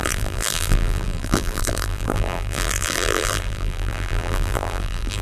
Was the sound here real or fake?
fake